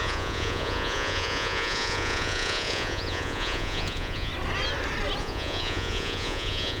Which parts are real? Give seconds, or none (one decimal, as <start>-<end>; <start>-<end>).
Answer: 4.3-5.2